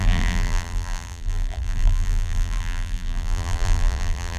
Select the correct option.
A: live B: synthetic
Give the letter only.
B